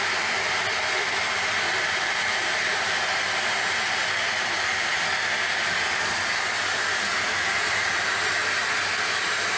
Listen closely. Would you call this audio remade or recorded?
recorded